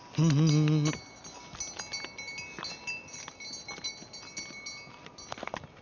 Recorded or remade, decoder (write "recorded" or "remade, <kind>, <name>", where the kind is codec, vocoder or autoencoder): recorded